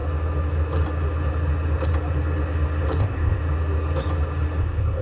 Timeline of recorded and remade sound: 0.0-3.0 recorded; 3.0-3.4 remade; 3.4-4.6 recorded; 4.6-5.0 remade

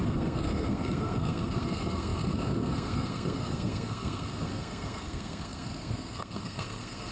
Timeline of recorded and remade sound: 0.0-7.1 remade

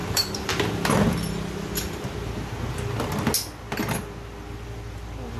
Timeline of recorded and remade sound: 0.0-0.7 remade; 0.7-5.4 recorded

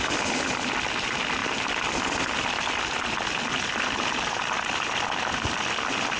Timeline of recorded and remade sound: 0.0-6.2 recorded

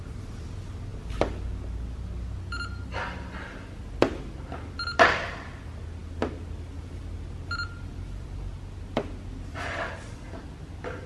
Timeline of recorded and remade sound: 0.0-0.9 remade; 0.9-4.7 recorded; 4.7-11.1 remade